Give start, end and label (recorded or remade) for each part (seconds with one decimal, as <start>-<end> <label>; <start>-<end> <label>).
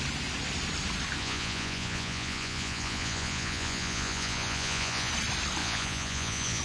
0.0-1.2 recorded; 1.2-5.1 remade; 5.1-5.6 recorded; 5.6-6.6 remade